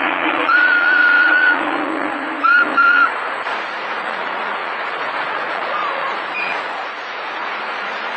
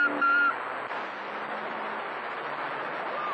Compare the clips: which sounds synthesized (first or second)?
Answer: first